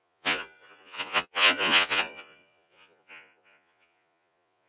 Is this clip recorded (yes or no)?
no